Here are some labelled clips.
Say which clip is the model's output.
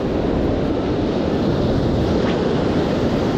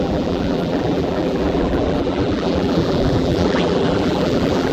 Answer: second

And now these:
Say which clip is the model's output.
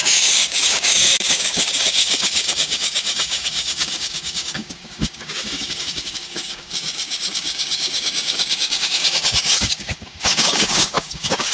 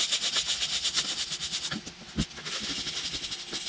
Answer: first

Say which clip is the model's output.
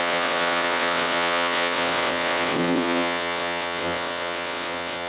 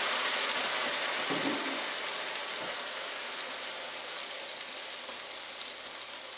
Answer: first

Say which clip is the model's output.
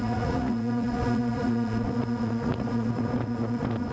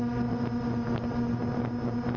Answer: first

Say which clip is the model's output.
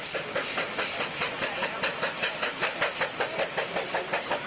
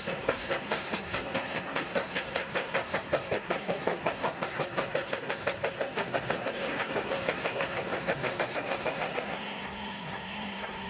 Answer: second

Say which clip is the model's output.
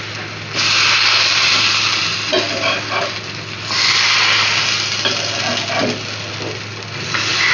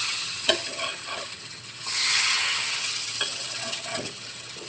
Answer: second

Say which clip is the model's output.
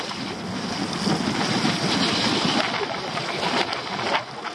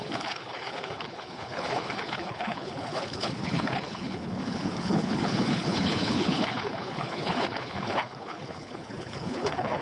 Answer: second